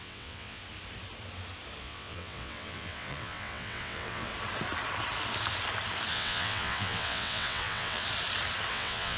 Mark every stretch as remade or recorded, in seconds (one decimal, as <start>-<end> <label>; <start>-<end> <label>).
0.0-0.6 remade; 0.6-1.8 recorded; 1.8-4.3 remade; 4.3-6.1 recorded; 6.1-8.0 remade; 8.0-8.7 recorded; 8.7-9.2 remade